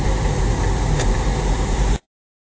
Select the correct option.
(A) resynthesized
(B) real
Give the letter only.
B